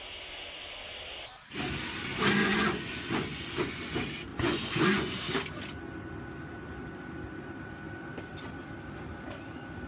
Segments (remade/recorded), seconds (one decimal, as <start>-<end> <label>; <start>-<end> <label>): 0.0-2.4 recorded; 2.4-3.9 remade; 3.9-4.3 recorded; 4.3-5.2 remade; 5.2-9.9 recorded